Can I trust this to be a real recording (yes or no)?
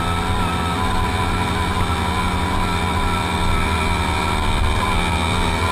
yes